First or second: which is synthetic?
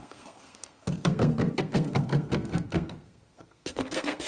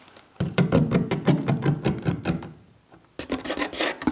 first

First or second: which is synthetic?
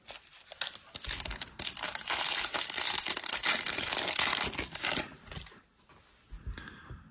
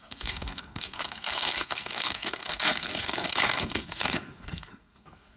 second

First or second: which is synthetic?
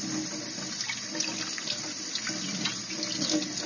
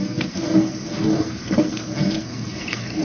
second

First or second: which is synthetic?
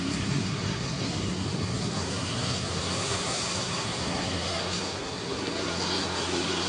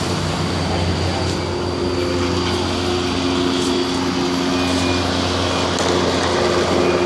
first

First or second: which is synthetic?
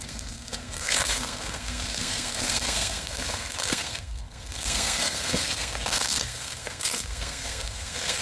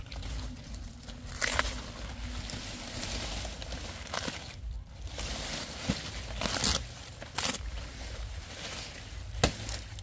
first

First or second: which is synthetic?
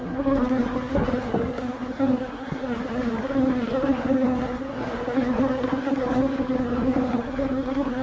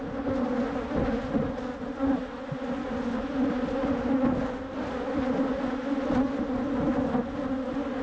first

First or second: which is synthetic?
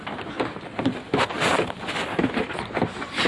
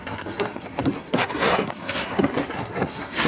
second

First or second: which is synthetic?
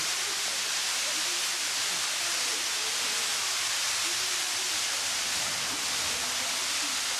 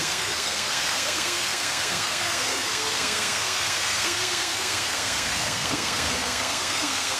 second